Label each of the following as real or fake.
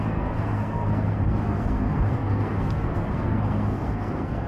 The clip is fake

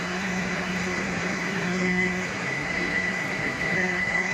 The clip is fake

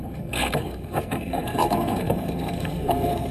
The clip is fake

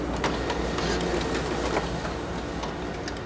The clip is real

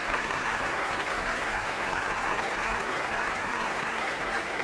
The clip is fake